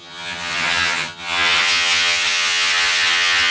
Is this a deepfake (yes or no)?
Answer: yes